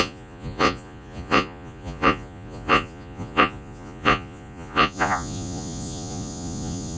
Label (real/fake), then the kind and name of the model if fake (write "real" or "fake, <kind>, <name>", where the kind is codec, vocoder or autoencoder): fake, vocoder, Vocos